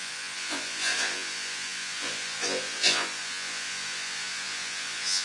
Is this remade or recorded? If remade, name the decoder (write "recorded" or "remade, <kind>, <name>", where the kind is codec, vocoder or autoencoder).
remade, vocoder, Vocos